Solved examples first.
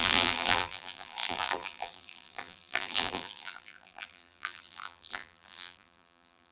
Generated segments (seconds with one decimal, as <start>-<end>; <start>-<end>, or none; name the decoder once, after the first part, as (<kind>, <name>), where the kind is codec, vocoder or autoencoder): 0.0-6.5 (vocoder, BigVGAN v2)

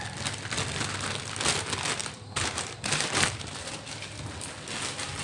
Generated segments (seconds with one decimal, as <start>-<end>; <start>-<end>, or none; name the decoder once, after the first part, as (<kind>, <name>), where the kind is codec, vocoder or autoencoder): 2.0-4.3 (vocoder, BigVGAN v2)

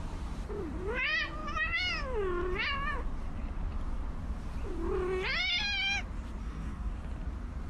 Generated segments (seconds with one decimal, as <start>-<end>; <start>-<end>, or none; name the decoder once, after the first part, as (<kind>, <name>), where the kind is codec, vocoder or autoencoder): 6.4-6.9 (codec, DAC)

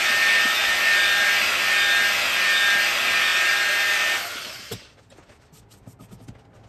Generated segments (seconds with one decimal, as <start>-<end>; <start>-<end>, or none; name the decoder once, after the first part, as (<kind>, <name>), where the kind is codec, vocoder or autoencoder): 3.3-5.0 (vocoder, BigVGAN v2)

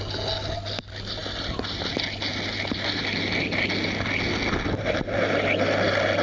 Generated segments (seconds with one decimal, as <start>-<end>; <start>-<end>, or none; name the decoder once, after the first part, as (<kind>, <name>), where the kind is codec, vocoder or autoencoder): none

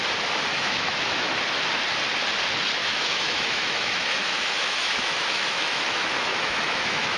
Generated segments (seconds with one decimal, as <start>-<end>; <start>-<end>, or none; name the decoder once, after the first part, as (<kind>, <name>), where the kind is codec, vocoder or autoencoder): 0.5-1.3 (autoencoder, DAC-VAE); 2.8-7.2

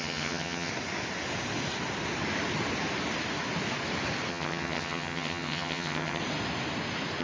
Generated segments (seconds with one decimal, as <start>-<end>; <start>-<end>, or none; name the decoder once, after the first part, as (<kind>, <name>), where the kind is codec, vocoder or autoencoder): 0.0-0.7 (vocoder, HiFi-GAN); 4.3-6.2

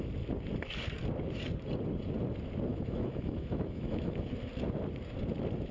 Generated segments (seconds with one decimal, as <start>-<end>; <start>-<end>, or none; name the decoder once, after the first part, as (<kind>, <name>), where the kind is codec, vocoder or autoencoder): 2.7-4.3 (autoencoder, DAC-VAE)